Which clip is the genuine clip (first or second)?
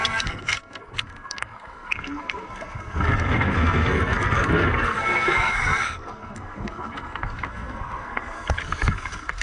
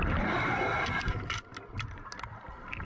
second